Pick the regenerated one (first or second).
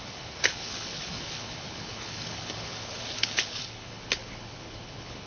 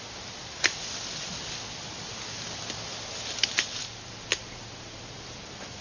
first